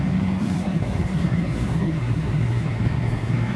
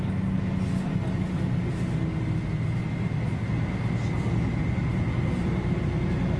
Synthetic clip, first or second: first